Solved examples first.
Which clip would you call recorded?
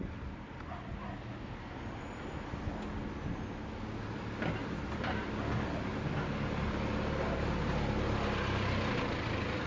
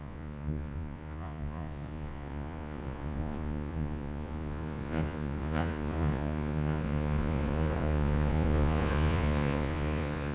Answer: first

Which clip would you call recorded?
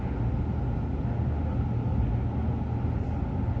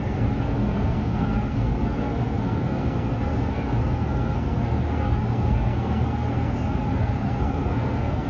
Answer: first